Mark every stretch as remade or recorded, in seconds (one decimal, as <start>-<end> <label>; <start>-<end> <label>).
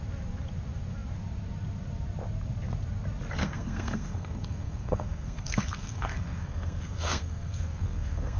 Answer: 0.0-3.4 recorded; 3.4-8.4 remade